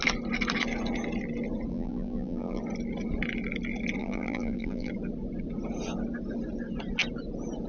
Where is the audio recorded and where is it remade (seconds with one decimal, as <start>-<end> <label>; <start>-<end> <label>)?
0.0-1.7 recorded; 1.7-2.6 remade; 2.6-4.0 recorded; 4.0-4.9 remade; 4.9-7.7 recorded